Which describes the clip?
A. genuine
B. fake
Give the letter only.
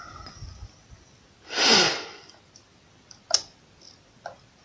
A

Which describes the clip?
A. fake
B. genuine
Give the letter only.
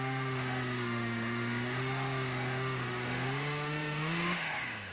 A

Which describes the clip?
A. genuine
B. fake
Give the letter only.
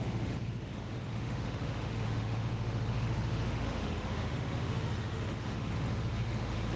B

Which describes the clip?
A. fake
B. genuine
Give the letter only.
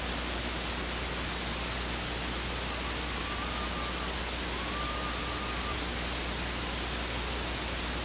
B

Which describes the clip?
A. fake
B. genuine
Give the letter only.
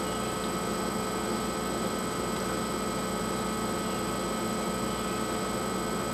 B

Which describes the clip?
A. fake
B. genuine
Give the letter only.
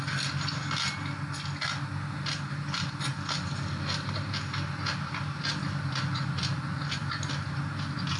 B